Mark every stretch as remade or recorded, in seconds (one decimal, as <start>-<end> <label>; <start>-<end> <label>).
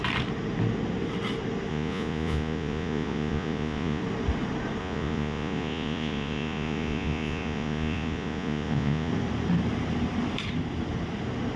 0.0-1.7 recorded; 1.7-4.0 remade; 4.0-4.8 recorded; 4.8-9.1 remade; 9.1-11.6 recorded